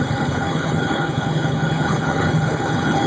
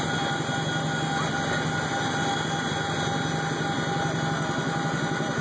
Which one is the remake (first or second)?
first